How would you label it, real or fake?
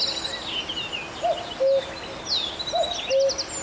real